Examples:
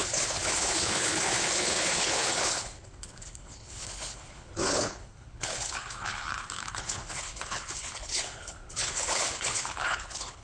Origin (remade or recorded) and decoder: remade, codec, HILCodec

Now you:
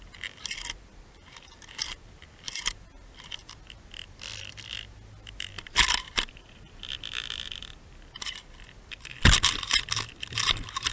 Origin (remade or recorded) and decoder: recorded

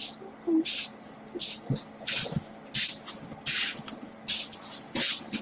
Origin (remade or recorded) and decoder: recorded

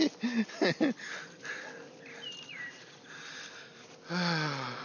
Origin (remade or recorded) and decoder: recorded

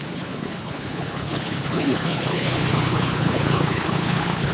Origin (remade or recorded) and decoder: remade, codec, HILCodec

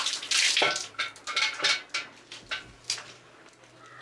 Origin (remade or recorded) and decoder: recorded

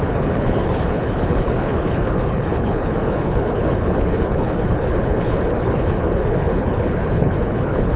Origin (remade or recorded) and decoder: remade, codec, HILCodec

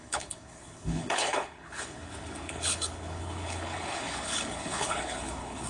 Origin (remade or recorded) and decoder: remade, codec, HILCodec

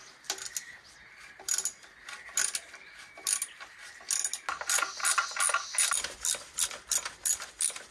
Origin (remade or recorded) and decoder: recorded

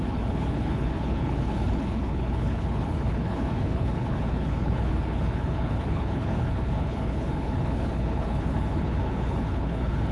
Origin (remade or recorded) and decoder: remade, codec, HILCodec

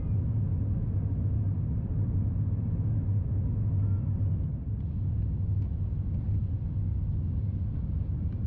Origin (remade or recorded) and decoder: recorded